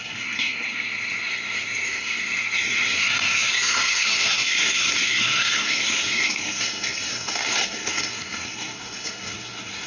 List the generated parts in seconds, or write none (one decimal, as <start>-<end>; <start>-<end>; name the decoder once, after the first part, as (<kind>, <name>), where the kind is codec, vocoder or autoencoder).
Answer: 0.0-9.9 (codec, SNAC)